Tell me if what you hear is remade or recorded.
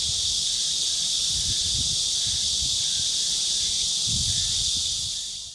recorded